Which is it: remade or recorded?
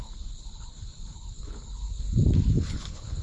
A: remade